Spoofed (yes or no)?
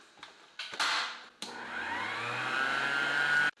no